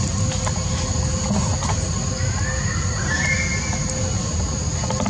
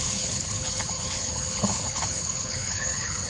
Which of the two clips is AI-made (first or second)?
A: second